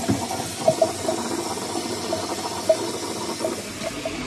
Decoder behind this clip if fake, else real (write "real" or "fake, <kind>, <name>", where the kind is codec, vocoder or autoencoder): real